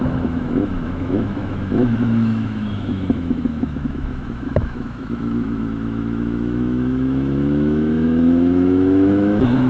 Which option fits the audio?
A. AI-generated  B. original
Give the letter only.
A